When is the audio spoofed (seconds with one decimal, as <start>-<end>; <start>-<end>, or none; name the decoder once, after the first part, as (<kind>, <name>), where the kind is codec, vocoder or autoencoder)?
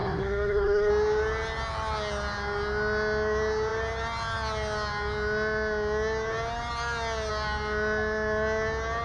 0.0-0.9 (codec, SNAC)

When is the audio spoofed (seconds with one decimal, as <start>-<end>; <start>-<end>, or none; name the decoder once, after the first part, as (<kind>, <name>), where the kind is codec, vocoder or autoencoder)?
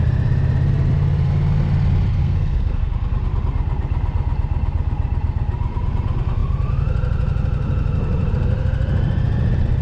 2.1-2.9 (codec, SNAC)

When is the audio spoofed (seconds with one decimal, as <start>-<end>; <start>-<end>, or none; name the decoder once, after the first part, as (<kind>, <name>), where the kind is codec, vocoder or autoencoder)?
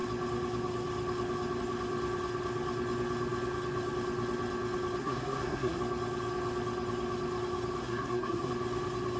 5.0-5.8 (codec, SNAC); 7.8-8.5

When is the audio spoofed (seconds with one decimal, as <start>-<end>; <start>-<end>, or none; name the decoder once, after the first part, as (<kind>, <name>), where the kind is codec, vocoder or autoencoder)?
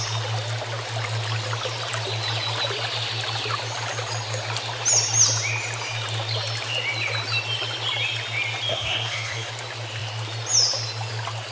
8.7-9.5 (codec, SNAC)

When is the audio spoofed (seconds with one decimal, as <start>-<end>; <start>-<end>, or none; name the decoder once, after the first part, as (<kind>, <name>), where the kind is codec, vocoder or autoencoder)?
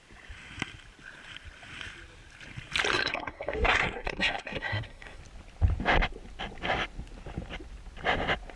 2.9-5.2 (codec, SNAC)